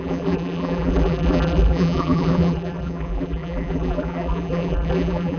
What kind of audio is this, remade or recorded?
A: remade